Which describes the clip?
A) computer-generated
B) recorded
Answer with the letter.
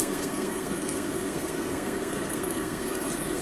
A